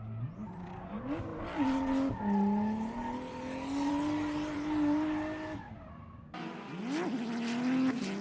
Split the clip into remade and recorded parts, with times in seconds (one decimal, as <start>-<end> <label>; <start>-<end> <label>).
0.0-8.2 recorded